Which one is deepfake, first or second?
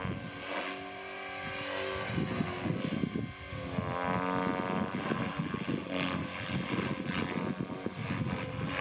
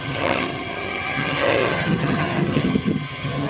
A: second